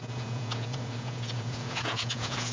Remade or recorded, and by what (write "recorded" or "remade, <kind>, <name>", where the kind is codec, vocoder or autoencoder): remade, vocoder, Vocos